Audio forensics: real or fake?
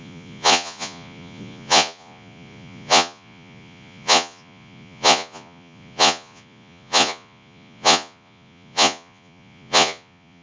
fake